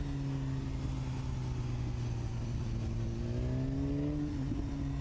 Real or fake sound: real